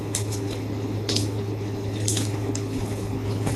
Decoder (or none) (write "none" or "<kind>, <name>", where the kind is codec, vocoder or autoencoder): codec, HILCodec